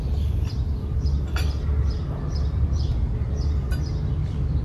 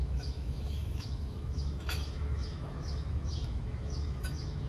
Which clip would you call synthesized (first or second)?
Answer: second